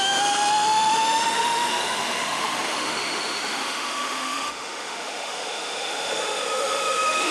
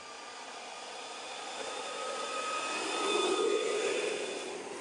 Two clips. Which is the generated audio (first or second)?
first